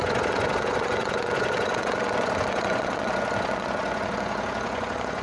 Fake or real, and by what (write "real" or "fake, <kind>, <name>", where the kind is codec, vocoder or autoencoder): fake, vocoder, Vocos